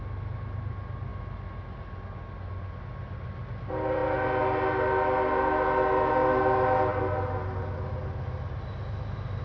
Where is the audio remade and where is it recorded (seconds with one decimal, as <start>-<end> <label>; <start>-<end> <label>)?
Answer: 0.0-9.4 recorded